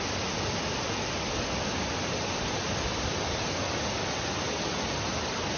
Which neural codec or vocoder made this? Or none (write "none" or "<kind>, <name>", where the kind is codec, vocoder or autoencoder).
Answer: none